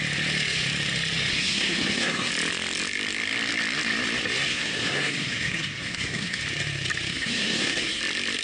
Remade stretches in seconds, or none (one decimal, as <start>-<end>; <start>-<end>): 1.3-2.3; 4.5-6.4; 7.1-8.0